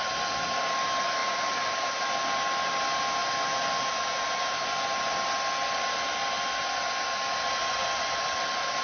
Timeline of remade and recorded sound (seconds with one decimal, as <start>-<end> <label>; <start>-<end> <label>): 0.0-8.8 recorded